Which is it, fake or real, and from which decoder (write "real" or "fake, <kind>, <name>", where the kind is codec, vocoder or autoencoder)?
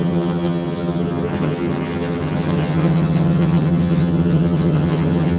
fake, vocoder, HiFi-GAN